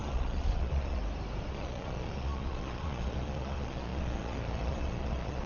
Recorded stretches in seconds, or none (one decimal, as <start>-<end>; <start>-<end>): 1.0-1.5